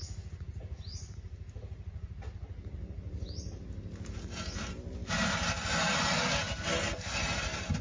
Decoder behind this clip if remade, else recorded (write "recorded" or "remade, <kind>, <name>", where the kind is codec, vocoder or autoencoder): recorded